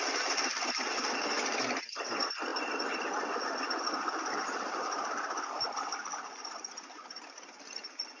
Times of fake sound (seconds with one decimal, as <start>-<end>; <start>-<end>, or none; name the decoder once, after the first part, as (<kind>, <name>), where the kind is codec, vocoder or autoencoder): 0.0-2.5 (vocoder, BigVGAN v2); 4.1-8.2

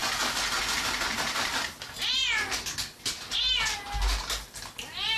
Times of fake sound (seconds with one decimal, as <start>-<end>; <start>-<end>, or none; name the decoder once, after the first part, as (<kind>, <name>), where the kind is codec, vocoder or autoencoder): none